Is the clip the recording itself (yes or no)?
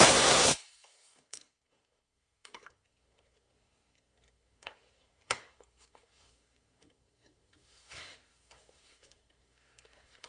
no